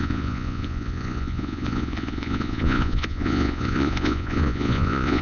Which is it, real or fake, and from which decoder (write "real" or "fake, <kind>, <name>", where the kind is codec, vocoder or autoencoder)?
fake, vocoder, Vocos